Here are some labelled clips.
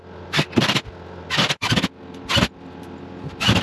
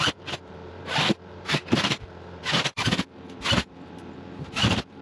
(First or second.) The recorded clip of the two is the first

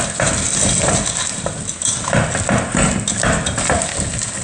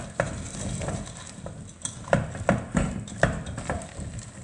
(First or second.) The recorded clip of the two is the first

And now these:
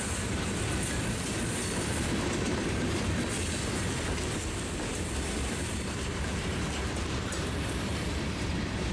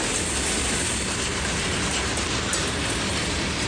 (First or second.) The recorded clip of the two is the second